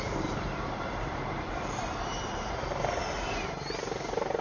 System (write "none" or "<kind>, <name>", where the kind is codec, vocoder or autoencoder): vocoder, BigVGAN v2